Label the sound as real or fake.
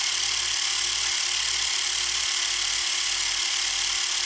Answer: real